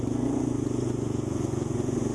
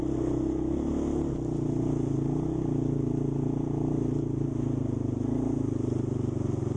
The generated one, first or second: first